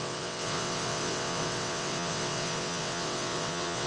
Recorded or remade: remade